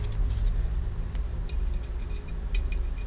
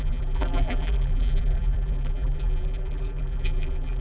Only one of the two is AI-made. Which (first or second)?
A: second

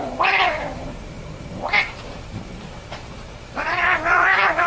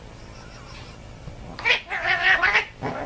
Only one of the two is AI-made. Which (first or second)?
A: first